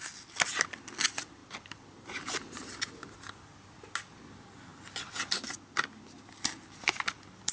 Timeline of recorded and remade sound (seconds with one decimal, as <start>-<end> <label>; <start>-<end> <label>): 0.0-7.5 recorded